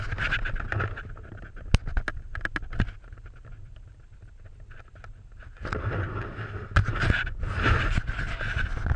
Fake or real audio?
real